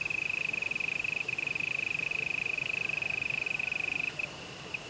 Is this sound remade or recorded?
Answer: recorded